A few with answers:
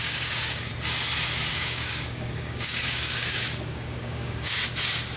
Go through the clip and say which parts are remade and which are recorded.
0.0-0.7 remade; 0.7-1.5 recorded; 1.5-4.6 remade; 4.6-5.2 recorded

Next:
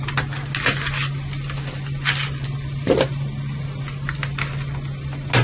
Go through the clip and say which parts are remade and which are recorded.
0.0-5.4 recorded